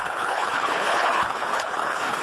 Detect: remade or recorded remade